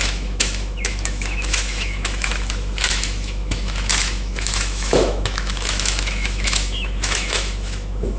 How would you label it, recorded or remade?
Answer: remade